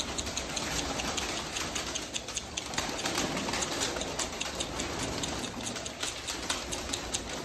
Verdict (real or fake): real